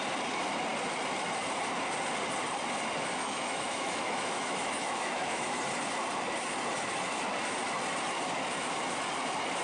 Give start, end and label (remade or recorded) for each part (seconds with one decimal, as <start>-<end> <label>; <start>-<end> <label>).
0.0-3.2 recorded; 3.2-5.6 remade; 5.6-9.6 recorded